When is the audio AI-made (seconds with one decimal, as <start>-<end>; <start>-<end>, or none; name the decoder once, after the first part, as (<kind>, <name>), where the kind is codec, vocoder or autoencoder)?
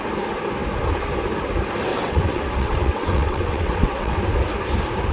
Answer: 1.9-4.2 (vocoder, WaveNeXt)